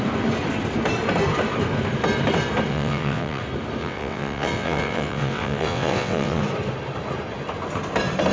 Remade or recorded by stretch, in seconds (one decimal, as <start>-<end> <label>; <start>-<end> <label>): 0.0-2.7 recorded; 2.7-3.4 remade; 3.4-3.8 recorded; 3.8-6.4 remade; 6.4-8.3 recorded